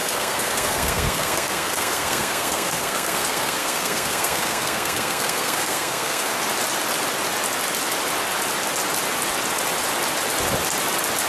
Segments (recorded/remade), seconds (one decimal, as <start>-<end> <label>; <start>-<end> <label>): 0.0-6.3 remade; 6.3-11.3 recorded